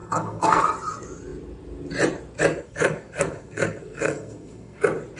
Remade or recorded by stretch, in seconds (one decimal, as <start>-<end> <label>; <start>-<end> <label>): 0.0-0.6 remade; 0.6-2.5 recorded; 2.5-4.8 remade; 4.8-5.2 recorded